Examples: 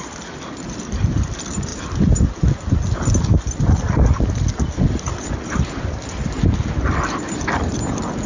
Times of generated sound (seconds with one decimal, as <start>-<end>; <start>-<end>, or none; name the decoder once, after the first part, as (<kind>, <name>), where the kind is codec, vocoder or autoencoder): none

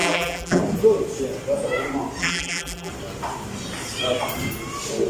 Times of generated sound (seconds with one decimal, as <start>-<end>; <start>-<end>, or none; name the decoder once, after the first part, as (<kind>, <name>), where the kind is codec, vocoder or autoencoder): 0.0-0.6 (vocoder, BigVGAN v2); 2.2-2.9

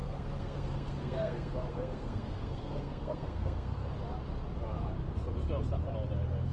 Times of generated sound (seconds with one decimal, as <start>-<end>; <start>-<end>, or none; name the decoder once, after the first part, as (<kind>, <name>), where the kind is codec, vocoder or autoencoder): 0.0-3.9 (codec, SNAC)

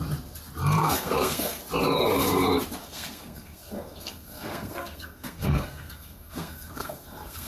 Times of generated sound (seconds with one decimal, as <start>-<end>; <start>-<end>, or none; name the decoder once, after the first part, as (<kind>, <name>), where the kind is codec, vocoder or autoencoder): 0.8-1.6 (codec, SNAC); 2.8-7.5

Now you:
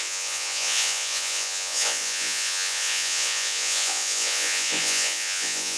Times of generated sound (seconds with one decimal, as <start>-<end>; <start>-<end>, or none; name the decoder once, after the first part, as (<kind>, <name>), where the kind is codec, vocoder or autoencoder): 0.0-5.8 (vocoder, Vocos)

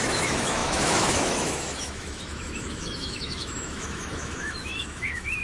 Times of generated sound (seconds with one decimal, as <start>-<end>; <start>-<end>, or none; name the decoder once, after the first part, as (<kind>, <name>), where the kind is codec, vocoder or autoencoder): 0.0-5.4 (autoencoder, DAC-VAE)

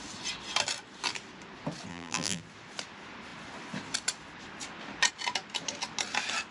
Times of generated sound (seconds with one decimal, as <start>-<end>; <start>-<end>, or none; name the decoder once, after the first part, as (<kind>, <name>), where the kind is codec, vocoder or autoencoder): 1.9-2.4 (vocoder, BigVGAN v2)

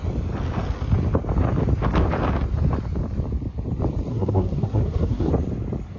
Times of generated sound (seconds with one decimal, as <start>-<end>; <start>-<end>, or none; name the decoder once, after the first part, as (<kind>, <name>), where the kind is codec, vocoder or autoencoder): 4.1-5.3 (codec, SNAC)